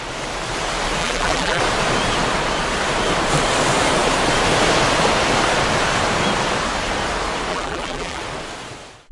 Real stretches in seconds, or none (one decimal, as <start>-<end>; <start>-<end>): 0.0-1.0; 1.6-7.5; 8.2-9.1